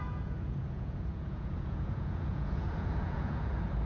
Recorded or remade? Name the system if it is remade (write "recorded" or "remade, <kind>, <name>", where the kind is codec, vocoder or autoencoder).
remade, vocoder, Vocos